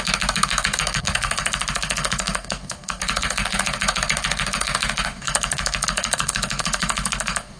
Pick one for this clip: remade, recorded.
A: remade